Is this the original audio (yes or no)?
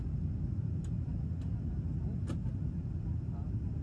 yes